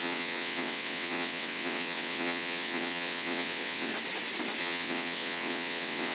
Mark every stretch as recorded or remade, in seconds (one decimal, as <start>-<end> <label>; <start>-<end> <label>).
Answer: 0.0-3.9 remade; 3.9-4.6 recorded; 4.6-6.1 remade